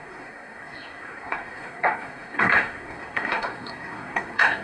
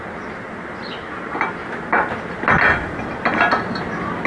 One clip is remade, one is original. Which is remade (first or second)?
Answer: first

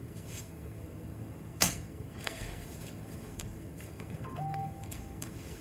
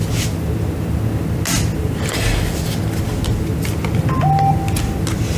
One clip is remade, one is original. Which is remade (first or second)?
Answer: first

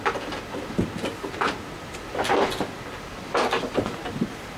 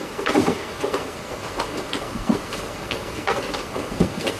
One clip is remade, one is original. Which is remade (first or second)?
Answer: second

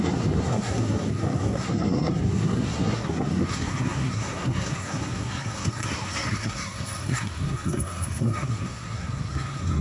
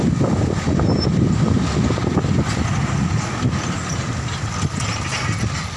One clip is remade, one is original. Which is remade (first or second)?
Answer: first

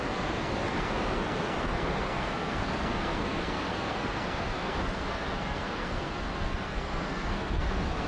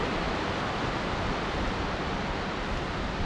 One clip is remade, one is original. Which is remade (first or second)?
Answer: first